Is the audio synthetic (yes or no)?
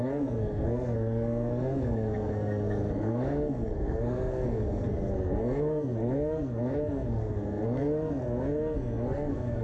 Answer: yes